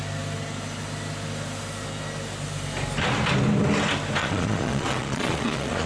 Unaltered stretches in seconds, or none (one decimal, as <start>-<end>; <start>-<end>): 0.0-4.2